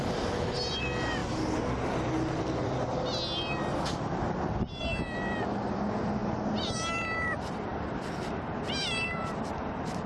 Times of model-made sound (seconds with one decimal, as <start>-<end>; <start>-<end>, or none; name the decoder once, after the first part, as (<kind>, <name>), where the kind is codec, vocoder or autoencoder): 6.2-6.9 (vocoder, BigVGAN v2); 7.7-8.3; 9.2-9.7